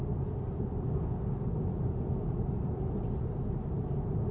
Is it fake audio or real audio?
real